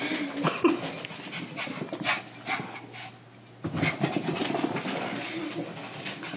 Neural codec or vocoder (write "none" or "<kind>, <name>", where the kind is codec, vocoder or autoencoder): none